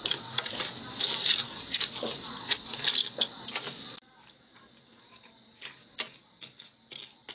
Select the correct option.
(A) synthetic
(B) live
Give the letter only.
B